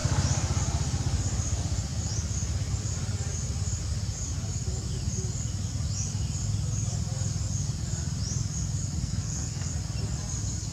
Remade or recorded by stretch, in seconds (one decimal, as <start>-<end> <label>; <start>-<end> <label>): 0.0-9.0 recorded; 9.0-9.7 remade; 9.7-10.7 recorded